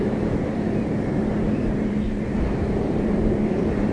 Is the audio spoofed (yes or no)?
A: yes